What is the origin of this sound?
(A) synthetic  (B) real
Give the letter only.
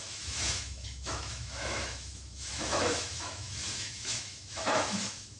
A